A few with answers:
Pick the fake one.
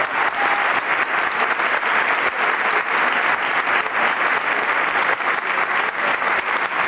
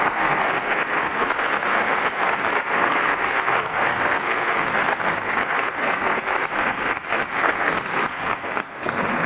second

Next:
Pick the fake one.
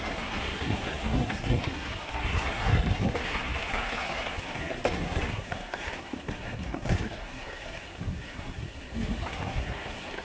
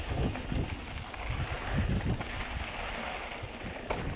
first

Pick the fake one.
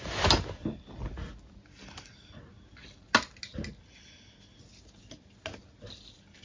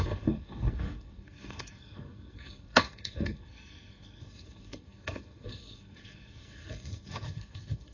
second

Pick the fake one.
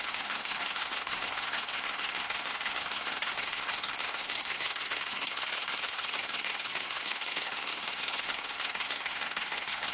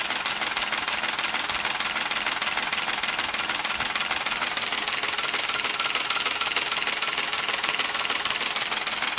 first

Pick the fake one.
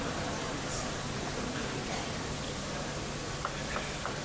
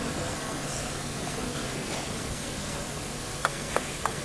second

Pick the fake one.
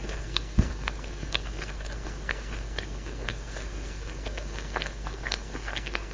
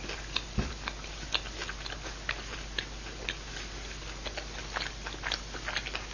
first